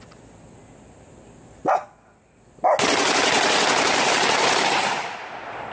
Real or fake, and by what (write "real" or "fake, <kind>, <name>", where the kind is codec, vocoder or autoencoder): real